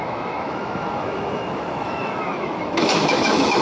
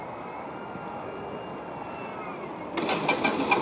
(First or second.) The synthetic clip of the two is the first